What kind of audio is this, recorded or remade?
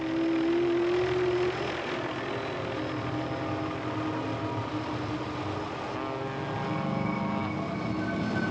recorded